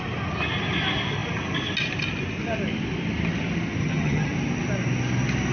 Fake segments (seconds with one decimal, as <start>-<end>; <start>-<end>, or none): 3.8-4.3